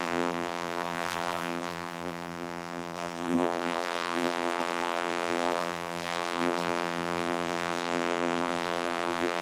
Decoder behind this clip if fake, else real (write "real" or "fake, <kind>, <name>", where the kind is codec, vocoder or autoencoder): fake, vocoder, BigVGAN v2